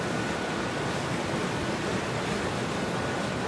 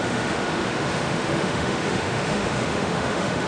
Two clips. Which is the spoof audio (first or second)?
second